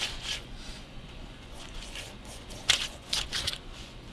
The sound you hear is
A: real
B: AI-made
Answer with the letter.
B